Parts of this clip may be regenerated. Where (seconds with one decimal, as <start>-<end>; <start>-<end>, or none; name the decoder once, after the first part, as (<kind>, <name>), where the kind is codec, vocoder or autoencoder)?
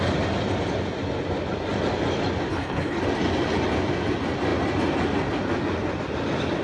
2.5-3.0 (codec, HILCodec)